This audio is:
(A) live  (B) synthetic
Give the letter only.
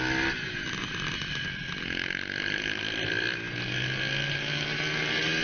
A